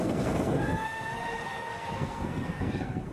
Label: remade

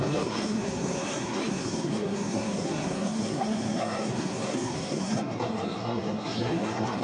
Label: remade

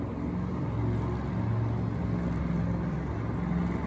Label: recorded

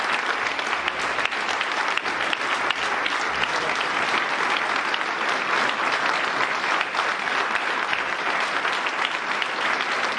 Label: recorded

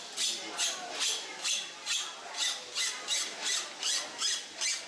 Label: recorded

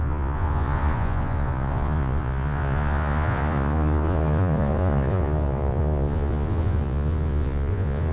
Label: remade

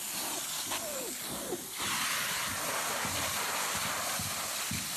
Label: recorded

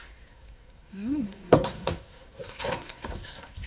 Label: remade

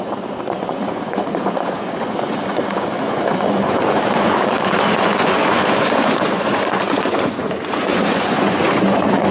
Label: remade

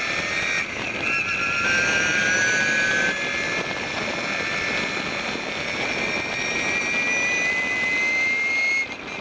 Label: recorded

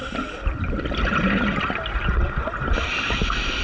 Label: recorded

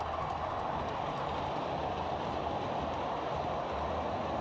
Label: recorded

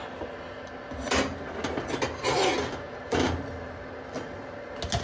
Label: recorded